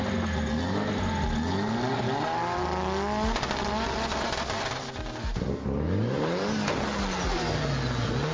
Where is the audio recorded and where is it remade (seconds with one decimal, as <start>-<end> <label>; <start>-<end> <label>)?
0.0-8.3 recorded